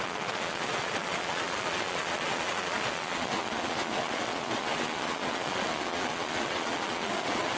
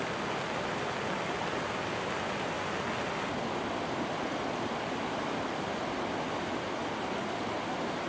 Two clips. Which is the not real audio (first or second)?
first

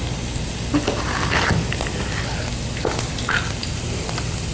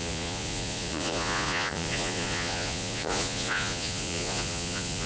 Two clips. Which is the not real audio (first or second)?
second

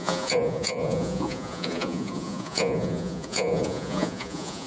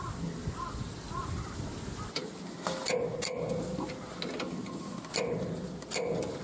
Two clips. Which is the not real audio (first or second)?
first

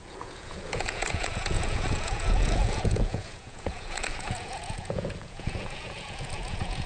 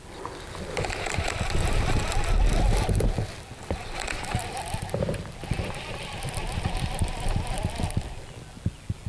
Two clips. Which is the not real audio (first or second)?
first